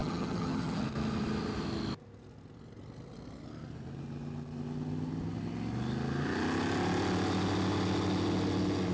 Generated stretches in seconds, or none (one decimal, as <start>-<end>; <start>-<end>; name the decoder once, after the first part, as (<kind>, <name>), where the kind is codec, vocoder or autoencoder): 0.0-0.8 (vocoder, HiFi-GAN)